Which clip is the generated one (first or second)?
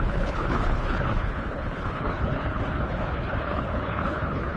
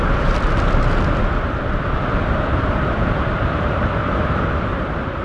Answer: first